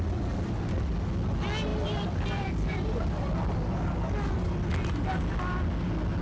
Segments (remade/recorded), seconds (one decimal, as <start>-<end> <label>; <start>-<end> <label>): 0.0-1.7 recorded; 1.7-4.7 remade; 4.7-6.2 recorded